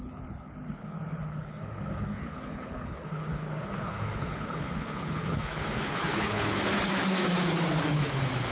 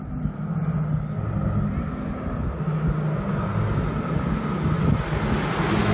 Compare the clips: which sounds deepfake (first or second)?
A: first